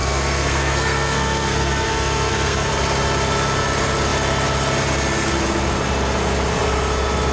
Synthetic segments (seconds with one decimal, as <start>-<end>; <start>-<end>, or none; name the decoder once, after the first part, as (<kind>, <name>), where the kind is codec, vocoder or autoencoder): 0.0-2.7 (codec, SNAC)